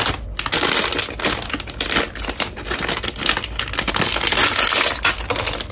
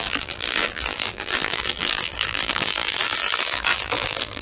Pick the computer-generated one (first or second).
second